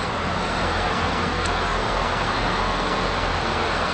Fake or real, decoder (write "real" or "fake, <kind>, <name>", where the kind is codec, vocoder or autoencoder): fake, codec, SNAC